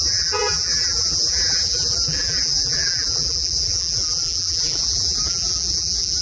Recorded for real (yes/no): no